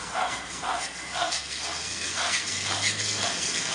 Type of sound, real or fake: fake